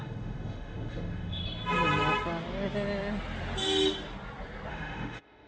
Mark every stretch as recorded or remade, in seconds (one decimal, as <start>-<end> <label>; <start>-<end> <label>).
0.0-1.4 remade; 1.4-4.7 recorded; 4.7-5.5 remade